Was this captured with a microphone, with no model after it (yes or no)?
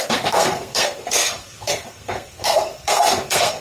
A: no